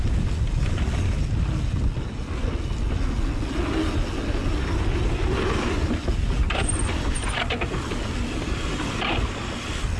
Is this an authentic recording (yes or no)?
yes